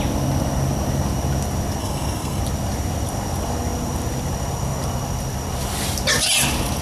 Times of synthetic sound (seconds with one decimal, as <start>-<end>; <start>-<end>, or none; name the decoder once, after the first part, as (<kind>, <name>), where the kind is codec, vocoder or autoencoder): 1.8-2.4 (codec, SNAC)